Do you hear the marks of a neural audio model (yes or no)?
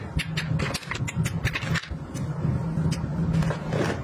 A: no